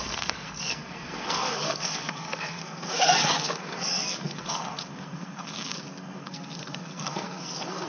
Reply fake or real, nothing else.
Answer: fake